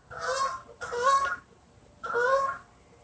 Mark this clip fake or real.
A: real